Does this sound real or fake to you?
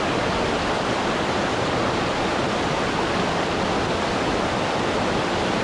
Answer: real